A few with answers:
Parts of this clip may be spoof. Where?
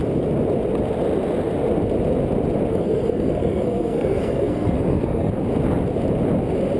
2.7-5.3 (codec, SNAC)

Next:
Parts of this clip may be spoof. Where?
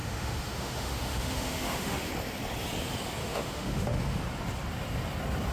0.0-2.1 (autoencoder, DAC-VAE); 3.2-4.2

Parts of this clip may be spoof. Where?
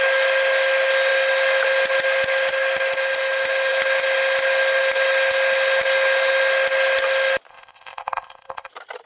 7.5-8.7 (codec, ZipCodec)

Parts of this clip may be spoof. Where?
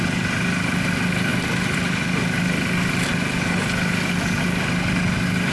none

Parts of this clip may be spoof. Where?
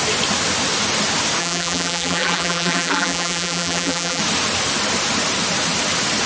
1.4-4.2 (vocoder, BigVGAN v2)